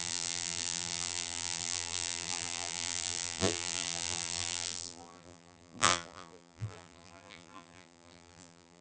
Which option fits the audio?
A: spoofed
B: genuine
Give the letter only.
A